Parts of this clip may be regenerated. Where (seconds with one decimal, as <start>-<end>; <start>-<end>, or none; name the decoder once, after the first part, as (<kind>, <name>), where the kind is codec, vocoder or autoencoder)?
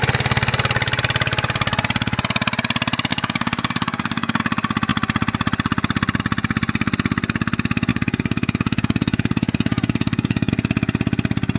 3.1-4.4 (codec, DAC); 7.9-10.5